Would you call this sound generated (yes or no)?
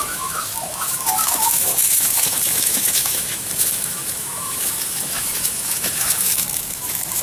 yes